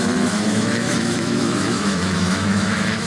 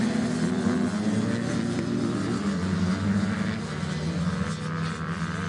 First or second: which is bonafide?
second